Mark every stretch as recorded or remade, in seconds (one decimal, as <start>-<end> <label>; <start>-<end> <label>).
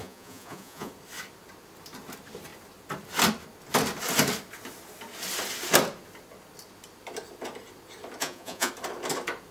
0.0-0.9 remade; 0.9-8.2 recorded; 8.2-8.7 remade; 8.7-9.5 recorded